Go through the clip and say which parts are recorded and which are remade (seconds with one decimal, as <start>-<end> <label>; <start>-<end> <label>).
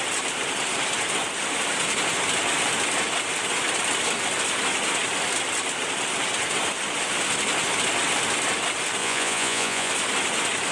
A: 0.0-9.0 recorded; 9.0-9.9 remade; 9.9-10.7 recorded